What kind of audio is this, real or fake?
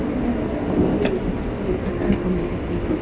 real